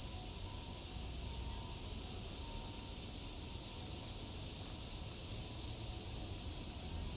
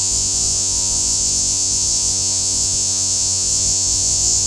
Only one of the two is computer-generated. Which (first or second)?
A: second